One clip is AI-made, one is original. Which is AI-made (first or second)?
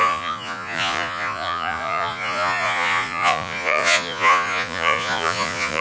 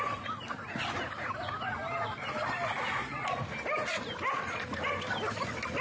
first